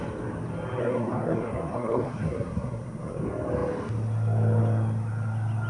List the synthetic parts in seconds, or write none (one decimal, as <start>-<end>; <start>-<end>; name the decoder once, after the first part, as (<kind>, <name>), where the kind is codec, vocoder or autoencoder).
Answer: 0.8-3.2 (codec, SNAC)